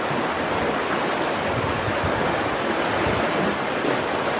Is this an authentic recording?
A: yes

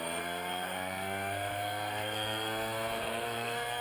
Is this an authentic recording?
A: no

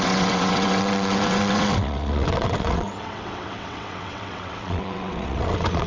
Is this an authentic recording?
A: no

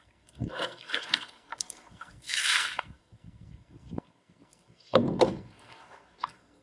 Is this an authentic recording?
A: no